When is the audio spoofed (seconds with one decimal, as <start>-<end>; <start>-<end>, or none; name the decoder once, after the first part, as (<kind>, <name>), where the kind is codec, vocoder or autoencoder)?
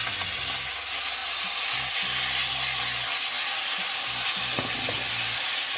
none